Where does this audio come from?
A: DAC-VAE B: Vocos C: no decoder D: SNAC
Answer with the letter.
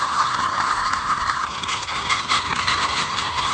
D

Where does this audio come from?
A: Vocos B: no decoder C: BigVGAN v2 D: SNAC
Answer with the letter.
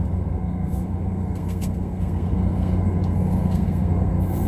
D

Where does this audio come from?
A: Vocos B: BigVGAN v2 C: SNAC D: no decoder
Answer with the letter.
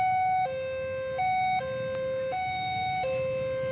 D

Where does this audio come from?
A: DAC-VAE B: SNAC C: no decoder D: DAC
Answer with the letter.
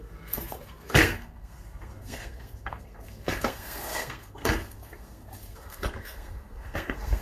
B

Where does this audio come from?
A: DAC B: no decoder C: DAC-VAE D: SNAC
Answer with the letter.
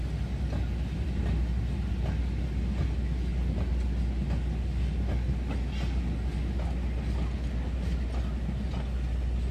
B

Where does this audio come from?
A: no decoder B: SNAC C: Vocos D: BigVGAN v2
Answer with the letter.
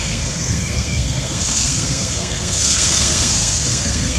B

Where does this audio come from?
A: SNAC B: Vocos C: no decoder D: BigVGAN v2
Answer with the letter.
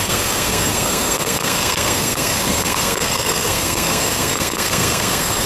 A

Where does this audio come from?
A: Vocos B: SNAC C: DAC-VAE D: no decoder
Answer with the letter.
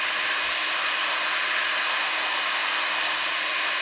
D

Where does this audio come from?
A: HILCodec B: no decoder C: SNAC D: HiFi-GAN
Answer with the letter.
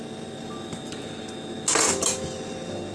B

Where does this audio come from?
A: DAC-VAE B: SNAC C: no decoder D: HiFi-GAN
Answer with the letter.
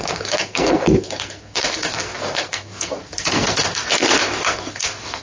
B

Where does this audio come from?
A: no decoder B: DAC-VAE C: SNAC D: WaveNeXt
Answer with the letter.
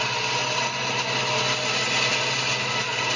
A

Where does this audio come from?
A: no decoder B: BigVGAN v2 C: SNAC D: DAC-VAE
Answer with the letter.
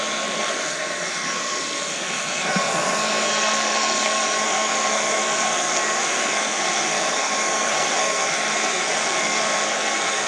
C